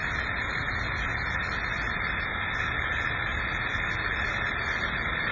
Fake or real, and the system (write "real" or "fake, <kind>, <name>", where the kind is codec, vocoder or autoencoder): real